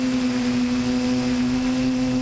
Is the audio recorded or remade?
recorded